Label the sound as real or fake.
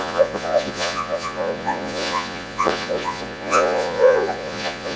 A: fake